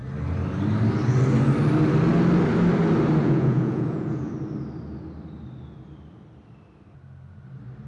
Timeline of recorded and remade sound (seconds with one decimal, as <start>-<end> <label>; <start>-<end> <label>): 0.0-3.2 recorded; 3.2-4.3 remade; 4.3-7.9 recorded